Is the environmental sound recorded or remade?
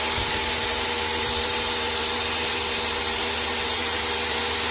remade